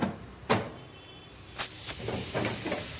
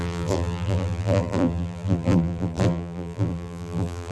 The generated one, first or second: second